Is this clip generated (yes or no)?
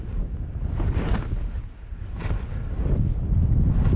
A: no